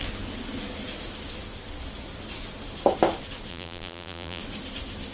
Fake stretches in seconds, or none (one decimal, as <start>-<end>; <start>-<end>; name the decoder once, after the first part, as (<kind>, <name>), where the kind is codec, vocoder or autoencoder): 3.5-4.4 (vocoder, BigVGAN v2)